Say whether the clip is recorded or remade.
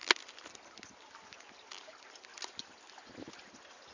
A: recorded